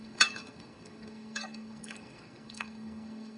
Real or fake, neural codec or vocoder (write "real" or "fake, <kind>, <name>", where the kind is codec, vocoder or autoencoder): fake, codec, SNAC